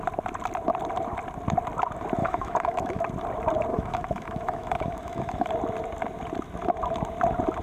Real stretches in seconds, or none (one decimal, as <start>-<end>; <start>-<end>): 0.0-2.2; 3.0-3.7; 5.5-7.6

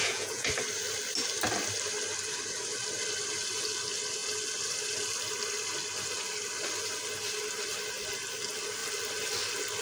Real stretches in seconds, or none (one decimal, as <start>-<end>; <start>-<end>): 0.5-9.8

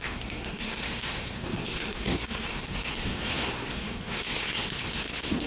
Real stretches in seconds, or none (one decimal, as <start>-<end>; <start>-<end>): none

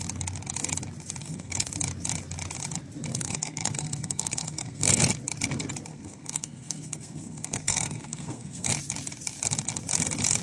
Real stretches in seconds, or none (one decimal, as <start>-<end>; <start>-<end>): 0.0-1.2; 1.7-3.1; 5.0-5.9; 8.7-10.4

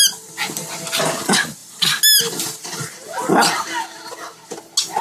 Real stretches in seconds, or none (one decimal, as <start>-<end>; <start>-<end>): 0.0-5.0

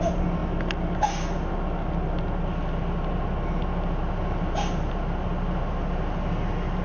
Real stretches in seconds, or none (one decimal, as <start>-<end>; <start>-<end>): 0.0-6.8